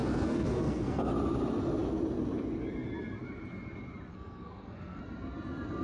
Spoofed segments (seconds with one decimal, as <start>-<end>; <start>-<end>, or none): 0.0-1.1; 4.1-5.0